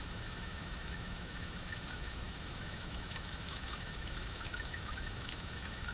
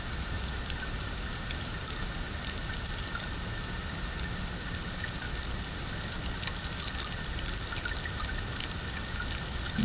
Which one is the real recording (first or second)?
second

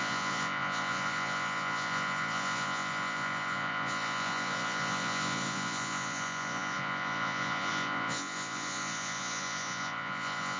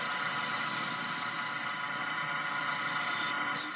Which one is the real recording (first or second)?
second